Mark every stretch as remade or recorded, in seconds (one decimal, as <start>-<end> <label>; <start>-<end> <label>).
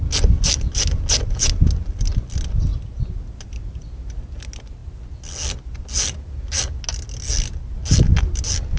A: 0.0-8.8 recorded